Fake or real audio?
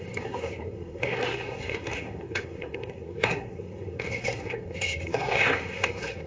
fake